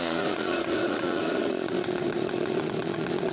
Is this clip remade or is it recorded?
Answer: remade